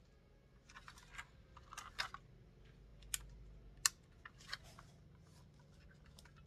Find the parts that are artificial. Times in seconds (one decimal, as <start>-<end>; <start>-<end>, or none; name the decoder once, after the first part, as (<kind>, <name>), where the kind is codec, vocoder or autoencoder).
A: none